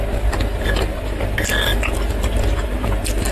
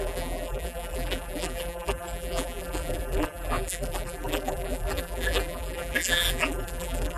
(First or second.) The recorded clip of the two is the first